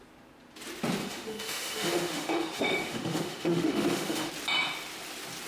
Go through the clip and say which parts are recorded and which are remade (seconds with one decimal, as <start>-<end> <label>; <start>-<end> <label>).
0.0-1.0 recorded; 1.0-4.3 remade; 4.3-5.5 recorded